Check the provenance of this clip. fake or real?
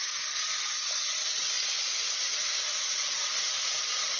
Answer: real